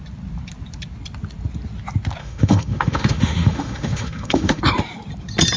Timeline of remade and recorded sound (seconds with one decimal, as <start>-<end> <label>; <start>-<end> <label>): 0.0-2.2 recorded; 2.2-4.6 remade; 4.6-5.6 recorded